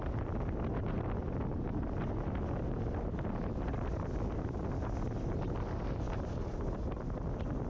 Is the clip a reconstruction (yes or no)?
no